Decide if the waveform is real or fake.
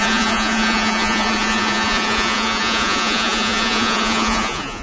fake